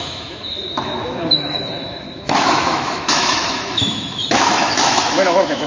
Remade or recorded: remade